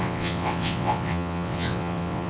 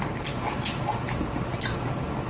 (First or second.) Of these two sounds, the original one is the second